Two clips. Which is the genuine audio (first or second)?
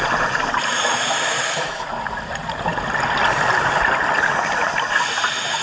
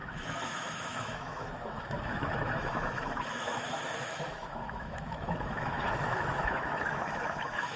first